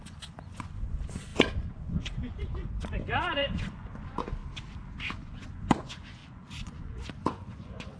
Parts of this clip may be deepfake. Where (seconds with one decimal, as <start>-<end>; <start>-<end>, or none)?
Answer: 0.0-4.4; 5.2-8.0